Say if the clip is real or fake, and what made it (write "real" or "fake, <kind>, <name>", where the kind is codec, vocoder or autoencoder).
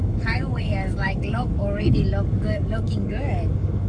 fake, codec, DAC